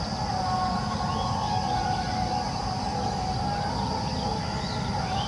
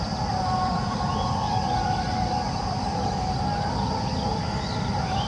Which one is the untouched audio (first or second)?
first